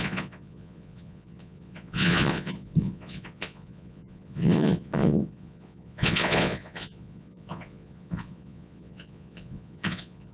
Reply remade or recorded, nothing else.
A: remade